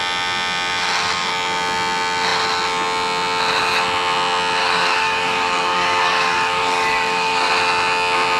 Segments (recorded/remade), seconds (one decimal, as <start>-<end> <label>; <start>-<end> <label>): 0.0-4.6 recorded; 4.6-7.5 remade; 7.5-8.4 recorded